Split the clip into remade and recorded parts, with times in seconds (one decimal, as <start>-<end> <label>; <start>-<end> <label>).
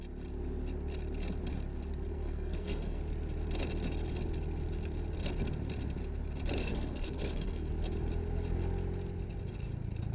0.0-2.1 recorded; 2.1-3.0 remade; 3.0-6.6 recorded; 6.6-7.7 remade; 7.7-10.1 recorded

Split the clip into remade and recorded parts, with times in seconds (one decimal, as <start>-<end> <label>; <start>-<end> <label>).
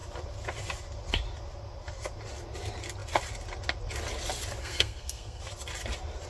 0.0-4.6 recorded; 4.6-5.4 remade; 5.4-6.3 recorded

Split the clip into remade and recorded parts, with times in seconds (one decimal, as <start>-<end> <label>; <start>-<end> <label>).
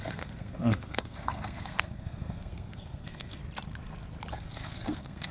0.0-3.4 remade; 3.4-4.3 recorded; 4.3-5.3 remade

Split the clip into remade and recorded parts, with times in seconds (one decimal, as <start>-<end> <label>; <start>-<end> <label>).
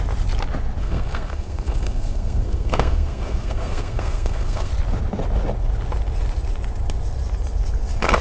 0.0-0.8 recorded; 0.8-4.7 remade; 4.7-8.2 recorded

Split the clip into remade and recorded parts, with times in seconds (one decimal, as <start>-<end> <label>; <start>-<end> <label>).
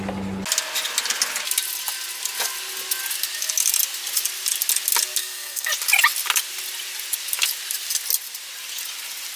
0.0-5.2 recorded; 5.2-5.7 remade; 5.7-9.4 recorded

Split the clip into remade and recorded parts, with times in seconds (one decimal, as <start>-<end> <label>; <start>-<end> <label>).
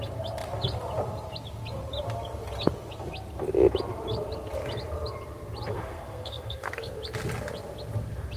0.0-5.7 recorded; 5.7-6.9 remade; 6.9-8.4 recorded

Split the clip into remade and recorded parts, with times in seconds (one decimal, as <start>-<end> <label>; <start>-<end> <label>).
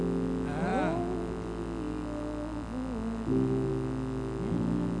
0.0-5.0 recorded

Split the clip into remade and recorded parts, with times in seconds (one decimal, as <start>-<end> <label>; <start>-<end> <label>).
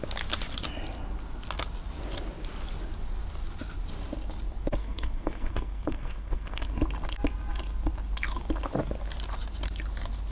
0.0-4.8 recorded; 4.8-6.7 remade; 6.7-10.3 recorded